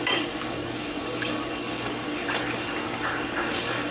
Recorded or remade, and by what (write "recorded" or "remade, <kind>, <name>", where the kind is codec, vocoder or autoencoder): remade, codec, DAC